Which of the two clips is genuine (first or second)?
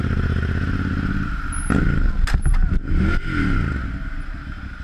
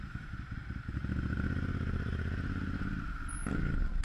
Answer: first